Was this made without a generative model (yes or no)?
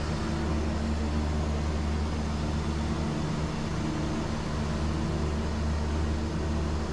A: yes